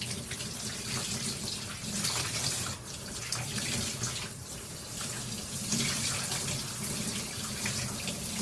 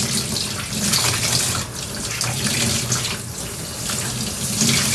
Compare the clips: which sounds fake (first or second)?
first